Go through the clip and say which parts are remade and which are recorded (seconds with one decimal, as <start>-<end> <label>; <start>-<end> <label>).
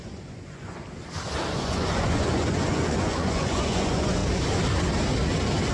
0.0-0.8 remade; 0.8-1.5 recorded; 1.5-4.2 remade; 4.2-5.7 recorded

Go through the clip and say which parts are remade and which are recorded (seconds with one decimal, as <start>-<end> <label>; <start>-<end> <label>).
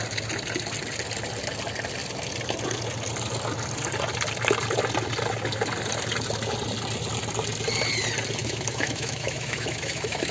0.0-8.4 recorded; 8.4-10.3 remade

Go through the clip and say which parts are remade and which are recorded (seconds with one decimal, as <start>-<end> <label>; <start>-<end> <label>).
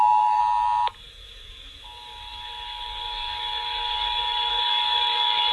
0.0-0.4 remade; 0.4-1.1 recorded; 1.1-5.5 remade